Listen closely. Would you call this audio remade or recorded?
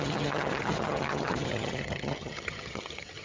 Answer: remade